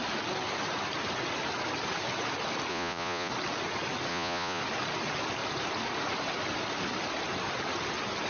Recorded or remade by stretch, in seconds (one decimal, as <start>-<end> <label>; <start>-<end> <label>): 0.0-2.7 recorded; 2.7-3.3 remade; 3.3-4.1 recorded; 4.1-4.6 remade; 4.6-8.3 recorded